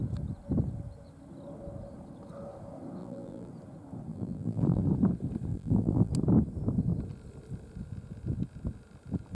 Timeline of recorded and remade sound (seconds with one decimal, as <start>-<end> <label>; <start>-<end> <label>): 0.0-3.0 recorded; 3.0-3.5 remade; 3.5-4.1 recorded; 4.1-4.8 remade; 4.8-5.5 recorded; 5.5-6.1 remade; 6.1-9.3 recorded